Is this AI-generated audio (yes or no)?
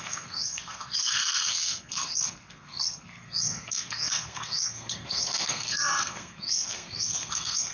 yes